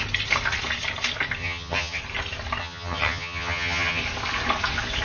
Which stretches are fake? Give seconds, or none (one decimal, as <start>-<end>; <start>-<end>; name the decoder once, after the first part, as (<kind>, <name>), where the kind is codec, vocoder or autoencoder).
1.4-2.0 (vocoder, HiFi-GAN); 2.6-4.0